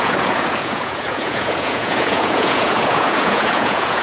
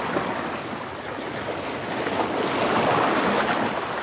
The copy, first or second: first